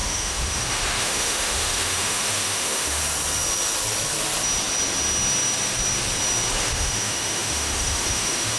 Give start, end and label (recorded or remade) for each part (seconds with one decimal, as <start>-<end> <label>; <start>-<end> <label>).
0.0-3.0 remade; 3.0-6.6 recorded; 6.6-8.6 remade